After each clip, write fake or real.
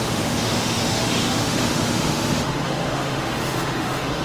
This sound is fake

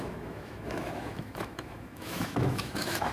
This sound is fake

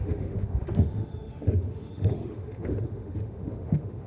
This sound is fake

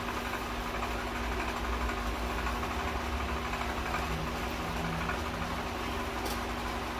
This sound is real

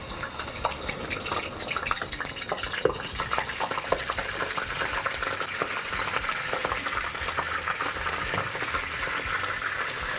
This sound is real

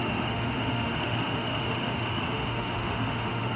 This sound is fake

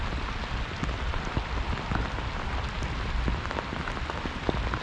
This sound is real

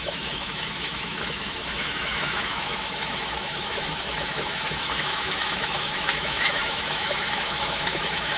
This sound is fake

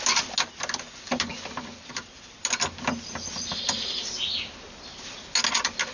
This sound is real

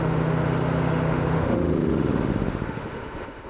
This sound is fake